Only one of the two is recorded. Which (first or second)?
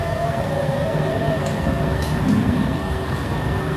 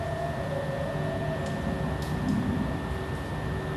second